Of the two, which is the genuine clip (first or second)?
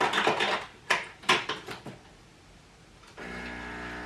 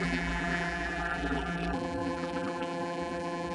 first